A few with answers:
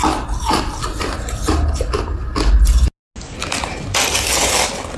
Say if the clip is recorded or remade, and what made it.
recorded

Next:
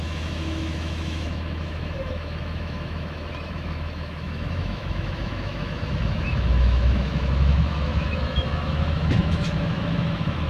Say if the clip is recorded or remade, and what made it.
remade, autoencoder, DAC-VAE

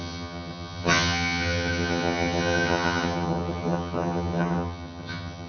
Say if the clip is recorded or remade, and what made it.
remade, vocoder, HiFi-GAN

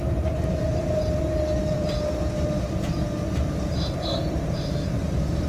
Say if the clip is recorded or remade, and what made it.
remade, vocoder, BigVGAN v2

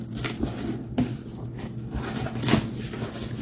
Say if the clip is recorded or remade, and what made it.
recorded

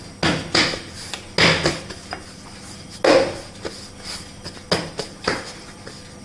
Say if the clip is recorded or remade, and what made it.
recorded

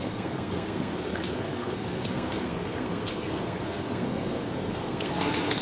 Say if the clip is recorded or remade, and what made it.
remade, codec, SNAC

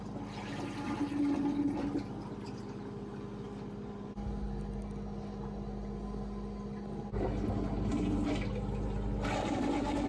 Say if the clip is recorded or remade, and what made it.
recorded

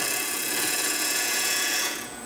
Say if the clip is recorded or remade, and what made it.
remade, vocoder, Vocos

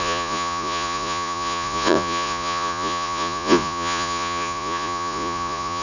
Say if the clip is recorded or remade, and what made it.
remade, vocoder, Vocos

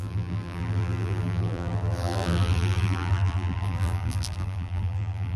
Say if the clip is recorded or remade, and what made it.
remade, vocoder, BigVGAN v2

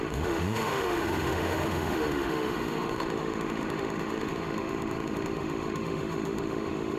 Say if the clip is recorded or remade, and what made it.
remade, autoencoder, DAC-VAE